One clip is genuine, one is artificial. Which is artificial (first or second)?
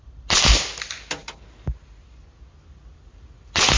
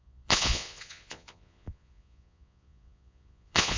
second